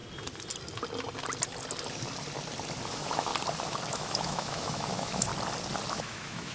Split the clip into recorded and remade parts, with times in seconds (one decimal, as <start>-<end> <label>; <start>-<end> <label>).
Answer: 0.0-2.9 recorded; 2.9-3.3 remade; 3.3-3.9 recorded; 3.9-5.3 remade; 5.3-5.9 recorded; 5.9-6.5 remade